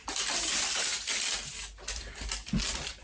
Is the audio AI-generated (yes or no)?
no